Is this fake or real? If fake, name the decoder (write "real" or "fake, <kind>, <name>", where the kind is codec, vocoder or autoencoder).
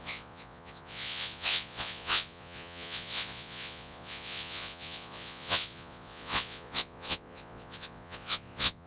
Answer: fake, vocoder, Vocos